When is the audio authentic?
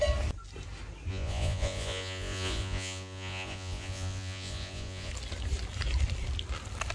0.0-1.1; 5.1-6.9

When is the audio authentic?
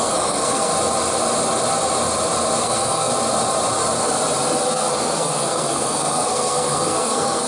0.7-2.6; 3.1-4.7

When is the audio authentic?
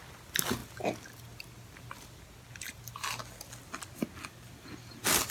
0.0-5.3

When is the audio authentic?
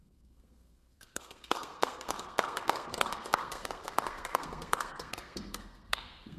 none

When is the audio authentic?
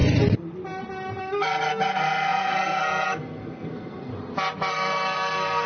0.0-1.2; 4.1-4.7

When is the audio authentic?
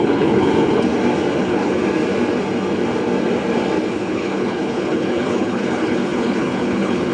0.9-1.4; 1.8-3.9